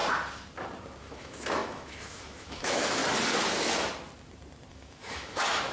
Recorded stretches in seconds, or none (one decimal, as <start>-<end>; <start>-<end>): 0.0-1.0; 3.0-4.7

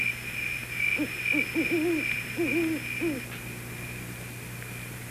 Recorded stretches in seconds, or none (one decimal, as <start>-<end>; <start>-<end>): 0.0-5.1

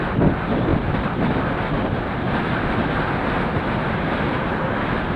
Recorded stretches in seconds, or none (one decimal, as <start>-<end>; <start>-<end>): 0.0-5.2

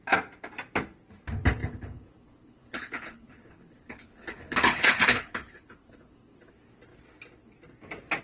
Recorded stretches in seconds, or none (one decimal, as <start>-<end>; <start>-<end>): 0.0-1.6; 6.5-8.2